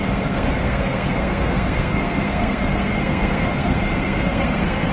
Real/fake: fake